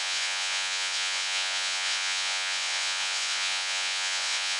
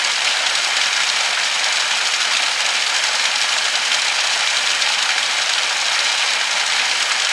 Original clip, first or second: second